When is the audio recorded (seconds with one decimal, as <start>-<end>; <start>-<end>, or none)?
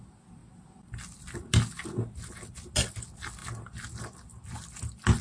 0.0-5.2